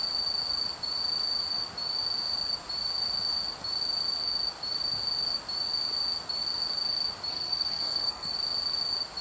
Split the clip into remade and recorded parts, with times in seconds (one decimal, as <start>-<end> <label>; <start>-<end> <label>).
0.0-7.3 recorded; 7.3-8.3 remade; 8.3-9.2 recorded